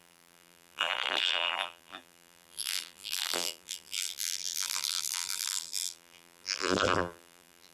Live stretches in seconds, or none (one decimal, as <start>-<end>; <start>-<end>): none